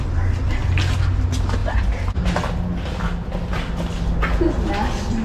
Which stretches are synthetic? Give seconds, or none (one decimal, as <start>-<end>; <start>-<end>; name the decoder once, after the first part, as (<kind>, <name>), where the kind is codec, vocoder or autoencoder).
none